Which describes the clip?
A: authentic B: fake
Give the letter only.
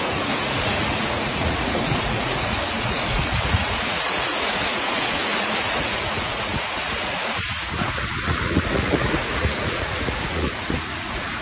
B